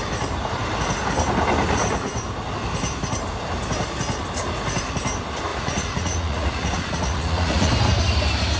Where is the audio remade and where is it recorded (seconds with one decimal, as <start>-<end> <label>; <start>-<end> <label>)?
0.0-5.5 recorded; 5.5-7.7 remade; 7.7-8.6 recorded